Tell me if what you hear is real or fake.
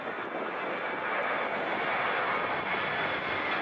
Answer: real